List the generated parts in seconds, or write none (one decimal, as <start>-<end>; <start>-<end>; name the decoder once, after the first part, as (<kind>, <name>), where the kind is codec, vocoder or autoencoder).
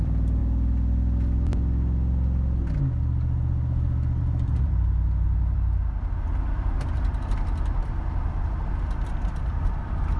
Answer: 0.0-0.4 (vocoder, BigVGAN v2); 4.2-7.8; 9.6-10.2